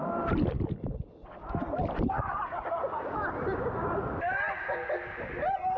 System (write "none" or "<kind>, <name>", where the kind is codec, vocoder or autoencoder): none